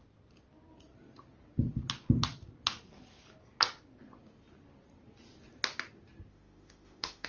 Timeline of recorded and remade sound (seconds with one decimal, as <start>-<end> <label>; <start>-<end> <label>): 0.0-6.3 recorded; 6.3-7.3 remade